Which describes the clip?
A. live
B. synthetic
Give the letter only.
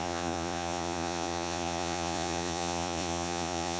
B